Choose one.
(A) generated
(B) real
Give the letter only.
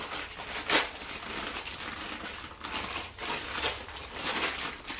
B